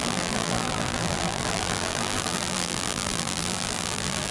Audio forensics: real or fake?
fake